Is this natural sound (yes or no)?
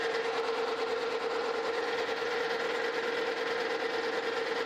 yes